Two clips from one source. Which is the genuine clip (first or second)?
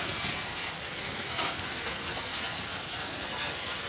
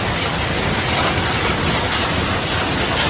second